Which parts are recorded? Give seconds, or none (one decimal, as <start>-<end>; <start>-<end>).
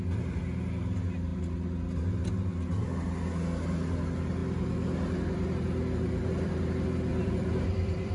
0.0-7.1